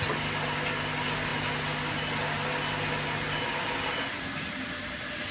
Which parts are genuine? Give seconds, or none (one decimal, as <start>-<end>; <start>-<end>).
0.0-5.3